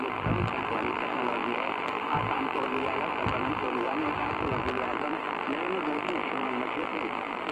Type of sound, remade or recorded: remade